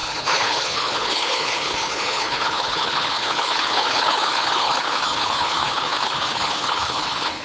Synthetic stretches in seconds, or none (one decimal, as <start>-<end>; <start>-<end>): 0.0-7.4